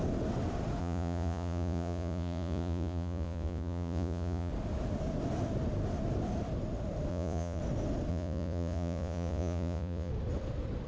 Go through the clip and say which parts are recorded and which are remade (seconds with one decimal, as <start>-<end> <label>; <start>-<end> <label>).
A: 0.0-0.8 recorded; 0.8-4.5 remade; 4.5-7.1 recorded; 7.1-7.6 remade; 7.6-8.1 recorded; 8.1-10.1 remade; 10.1-10.9 recorded